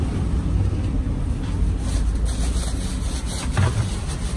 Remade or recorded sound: recorded